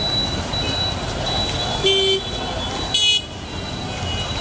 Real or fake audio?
real